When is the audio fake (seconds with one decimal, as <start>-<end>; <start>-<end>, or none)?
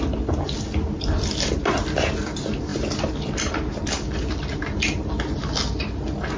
none